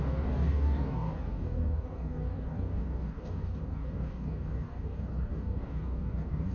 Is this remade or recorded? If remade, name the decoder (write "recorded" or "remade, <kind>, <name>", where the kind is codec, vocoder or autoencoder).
remade, codec, DAC